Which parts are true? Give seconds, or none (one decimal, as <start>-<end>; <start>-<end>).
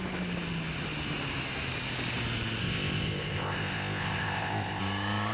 0.0-2.6; 4.8-5.3